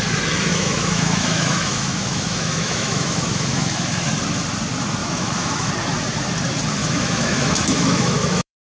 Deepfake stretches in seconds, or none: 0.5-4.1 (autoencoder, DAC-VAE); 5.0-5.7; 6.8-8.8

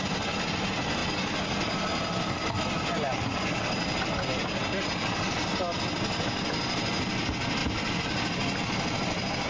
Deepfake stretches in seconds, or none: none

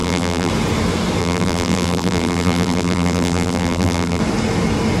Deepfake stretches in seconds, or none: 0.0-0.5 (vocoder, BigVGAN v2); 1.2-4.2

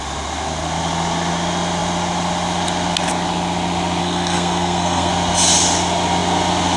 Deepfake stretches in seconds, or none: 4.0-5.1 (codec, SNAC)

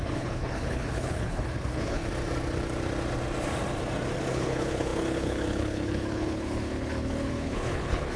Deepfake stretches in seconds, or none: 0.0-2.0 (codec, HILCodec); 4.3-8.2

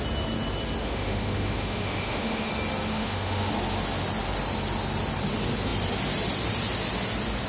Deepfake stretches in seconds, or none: 0.8-2.5 (autoencoder, DAC-VAE); 2.9-3.5